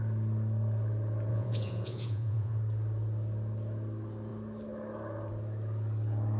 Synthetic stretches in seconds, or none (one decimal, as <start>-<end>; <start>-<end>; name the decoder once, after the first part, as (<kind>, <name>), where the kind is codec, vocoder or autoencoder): 1.3-2.6 (vocoder, Vocos)